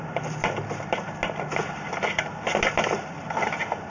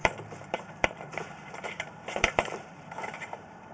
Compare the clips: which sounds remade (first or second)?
second